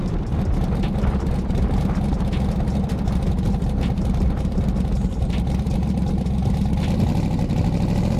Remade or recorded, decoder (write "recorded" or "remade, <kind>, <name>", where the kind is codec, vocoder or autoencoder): recorded